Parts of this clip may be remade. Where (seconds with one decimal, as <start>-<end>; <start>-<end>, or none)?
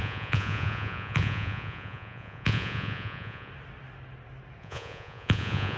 0.0-3.5; 4.6-5.8